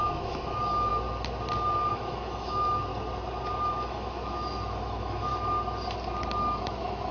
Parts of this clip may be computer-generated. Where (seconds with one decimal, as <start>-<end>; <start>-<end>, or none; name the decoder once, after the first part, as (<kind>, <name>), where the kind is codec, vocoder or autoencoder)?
0.0-0.9 (autoencoder, DAC-VAE); 1.9-2.9; 3.6-5.3; 6.6-7.1